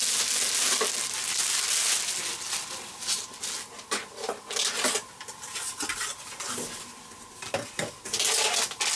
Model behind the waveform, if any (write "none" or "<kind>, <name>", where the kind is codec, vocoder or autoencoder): none